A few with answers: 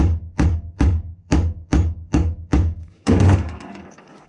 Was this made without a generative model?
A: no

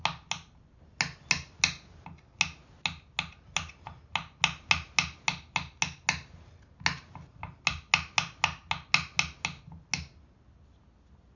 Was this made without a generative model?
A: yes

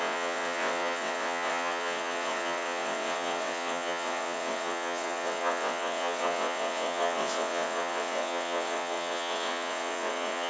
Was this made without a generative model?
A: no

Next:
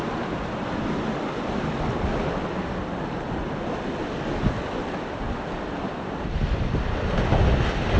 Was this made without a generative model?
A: yes